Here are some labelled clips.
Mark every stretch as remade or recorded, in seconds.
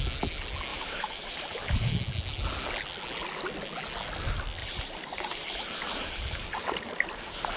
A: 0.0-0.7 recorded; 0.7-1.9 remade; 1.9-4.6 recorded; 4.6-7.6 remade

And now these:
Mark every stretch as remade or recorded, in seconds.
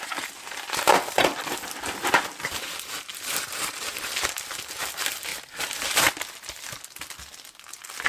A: 0.0-1.3 remade; 1.3-2.4 recorded; 2.4-5.3 remade; 5.3-8.1 recorded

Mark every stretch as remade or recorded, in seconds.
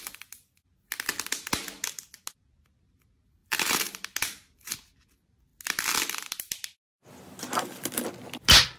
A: 0.0-3.4 recorded; 3.4-3.9 remade; 3.9-8.8 recorded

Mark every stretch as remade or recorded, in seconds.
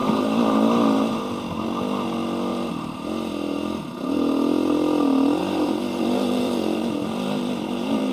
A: 0.0-2.5 recorded; 2.5-3.1 remade; 3.1-5.4 recorded; 5.4-8.1 remade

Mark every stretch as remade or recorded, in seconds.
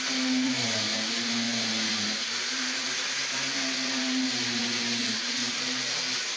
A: 0.0-5.4 remade; 5.4-6.4 recorded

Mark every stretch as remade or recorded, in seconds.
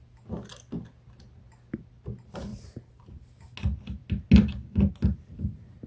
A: 0.0-2.5 recorded; 2.5-3.1 remade; 3.1-5.9 recorded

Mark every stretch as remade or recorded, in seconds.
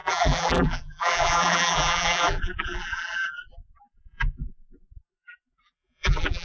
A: 0.0-6.4 remade